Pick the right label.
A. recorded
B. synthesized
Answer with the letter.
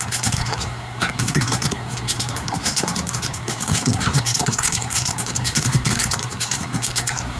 B